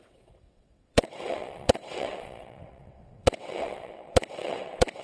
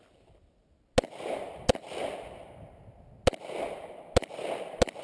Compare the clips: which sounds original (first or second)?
second